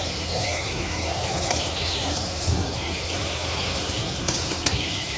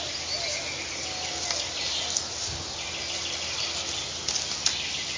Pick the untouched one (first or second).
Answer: second